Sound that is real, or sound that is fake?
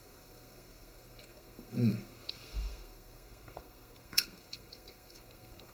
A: fake